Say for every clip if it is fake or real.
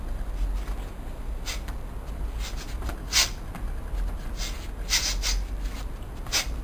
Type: real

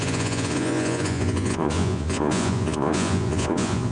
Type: fake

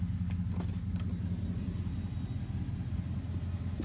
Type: real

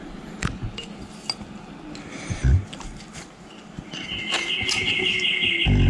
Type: real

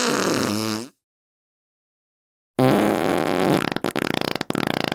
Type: real